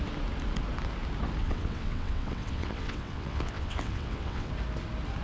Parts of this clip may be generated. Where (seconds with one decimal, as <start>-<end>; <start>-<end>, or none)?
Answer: 1.4-4.5